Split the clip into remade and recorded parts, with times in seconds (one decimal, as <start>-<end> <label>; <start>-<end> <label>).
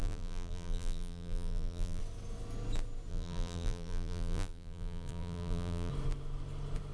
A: 0.0-2.0 remade; 2.0-3.1 recorded; 3.1-5.9 remade; 5.9-6.9 recorded